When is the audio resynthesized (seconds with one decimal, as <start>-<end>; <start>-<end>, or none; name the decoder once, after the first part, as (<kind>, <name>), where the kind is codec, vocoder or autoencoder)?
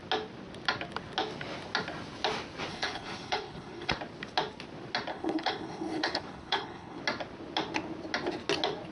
2.7-3.9 (codec, HILCodec); 5.1-7.0